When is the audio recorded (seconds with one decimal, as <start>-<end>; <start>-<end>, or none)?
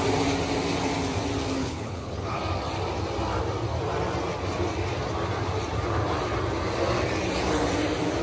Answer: 0.0-1.6; 2.4-8.2